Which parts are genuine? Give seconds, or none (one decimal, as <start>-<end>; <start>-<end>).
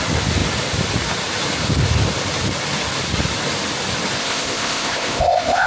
0.0-4.2